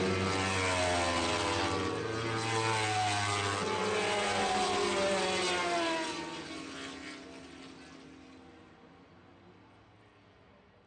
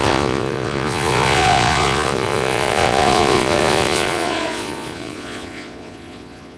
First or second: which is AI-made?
second